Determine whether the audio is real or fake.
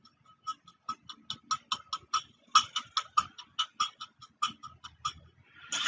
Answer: real